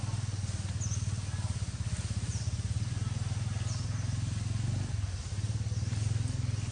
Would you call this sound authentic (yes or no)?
yes